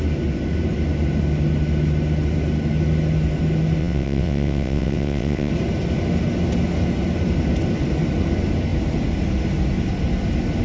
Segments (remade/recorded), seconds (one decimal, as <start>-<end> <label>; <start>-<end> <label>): 0.0-3.8 recorded; 3.8-5.5 remade; 5.5-10.6 recorded